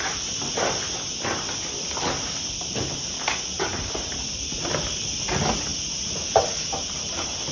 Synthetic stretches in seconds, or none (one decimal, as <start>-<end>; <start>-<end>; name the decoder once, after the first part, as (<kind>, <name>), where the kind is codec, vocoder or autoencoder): none